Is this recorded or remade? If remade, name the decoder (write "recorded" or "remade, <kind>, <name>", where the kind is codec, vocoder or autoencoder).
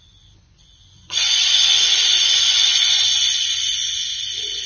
remade, vocoder, Vocos